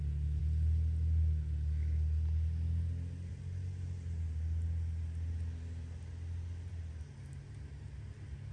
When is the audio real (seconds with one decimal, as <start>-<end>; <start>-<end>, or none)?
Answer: 0.0-8.5